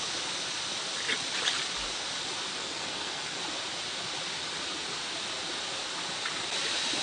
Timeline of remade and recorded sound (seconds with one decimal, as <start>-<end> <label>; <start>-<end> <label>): 0.0-2.6 recorded; 2.6-3.4 remade; 3.4-7.0 recorded